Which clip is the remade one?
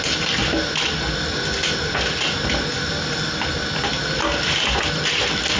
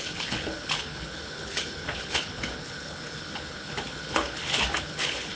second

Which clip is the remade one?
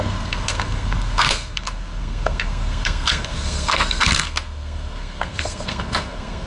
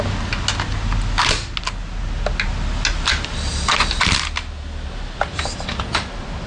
first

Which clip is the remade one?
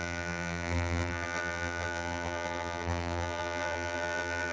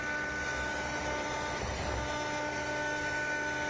first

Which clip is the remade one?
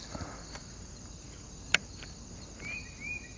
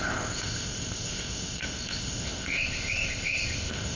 second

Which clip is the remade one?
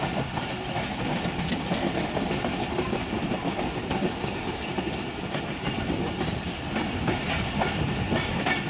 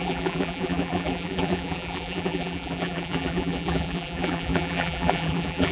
second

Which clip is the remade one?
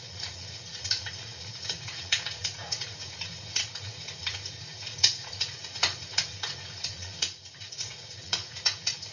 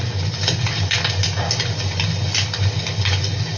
first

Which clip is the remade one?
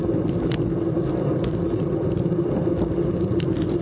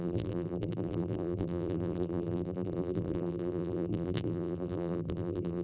second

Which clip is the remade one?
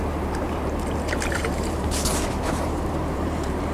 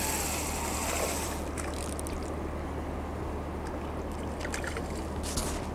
first